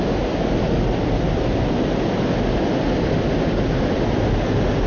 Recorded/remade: recorded